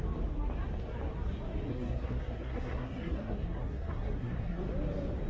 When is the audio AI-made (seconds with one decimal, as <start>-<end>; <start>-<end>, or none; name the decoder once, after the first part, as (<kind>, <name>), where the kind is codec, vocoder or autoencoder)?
1.7-4.6 (codec, SNAC)